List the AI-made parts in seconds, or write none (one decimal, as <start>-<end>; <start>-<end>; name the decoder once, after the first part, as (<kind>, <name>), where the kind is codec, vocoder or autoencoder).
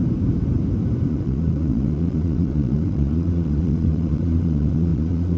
1.1-5.4 (vocoder, Vocos)